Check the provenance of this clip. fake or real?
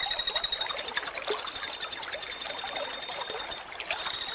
real